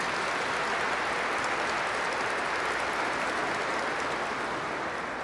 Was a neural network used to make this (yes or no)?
no